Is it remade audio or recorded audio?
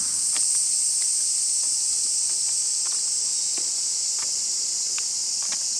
recorded